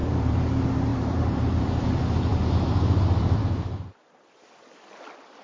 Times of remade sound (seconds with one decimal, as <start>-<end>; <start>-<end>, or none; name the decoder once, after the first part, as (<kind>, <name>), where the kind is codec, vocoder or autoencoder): 0.0-0.5 (vocoder, BigVGAN v2); 0.9-1.9; 2.3-3.4